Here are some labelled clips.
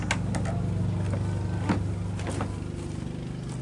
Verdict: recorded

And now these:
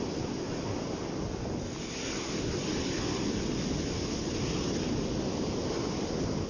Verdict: recorded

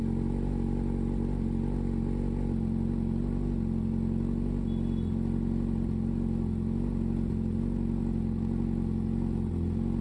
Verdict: recorded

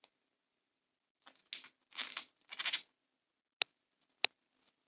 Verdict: recorded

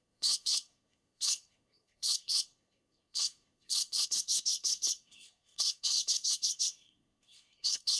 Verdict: remade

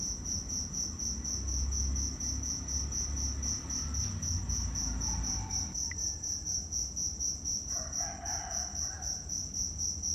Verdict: recorded